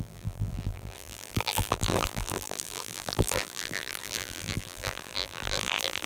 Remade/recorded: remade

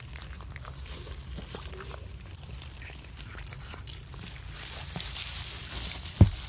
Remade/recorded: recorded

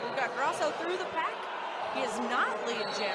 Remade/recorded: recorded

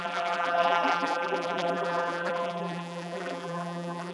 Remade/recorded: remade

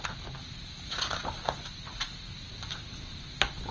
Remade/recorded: recorded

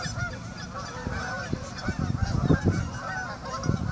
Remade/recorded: remade